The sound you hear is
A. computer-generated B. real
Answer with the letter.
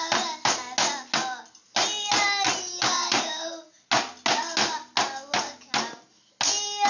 B